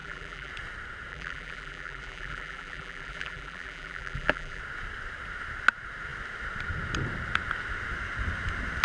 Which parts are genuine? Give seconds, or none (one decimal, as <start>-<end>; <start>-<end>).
0.5-1.1; 4.6-8.8

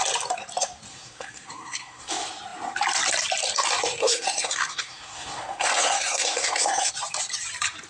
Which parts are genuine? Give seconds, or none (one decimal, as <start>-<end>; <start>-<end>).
0.0-0.9; 2.1-4.0; 6.9-7.9

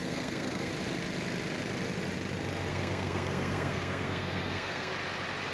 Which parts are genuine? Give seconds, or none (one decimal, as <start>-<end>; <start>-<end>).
0.7-2.7; 4.9-5.5

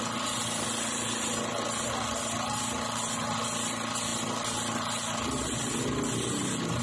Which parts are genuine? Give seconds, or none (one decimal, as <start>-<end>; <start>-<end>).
0.0-6.8

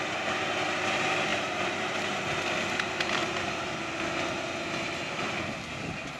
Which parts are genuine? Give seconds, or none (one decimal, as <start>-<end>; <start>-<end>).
0.0-1.3; 1.8-6.2

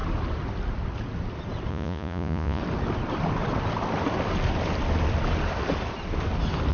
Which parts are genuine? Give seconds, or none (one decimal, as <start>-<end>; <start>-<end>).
0.0-1.7; 2.6-6.7